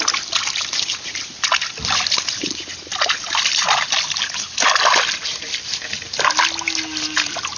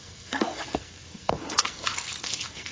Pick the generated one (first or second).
second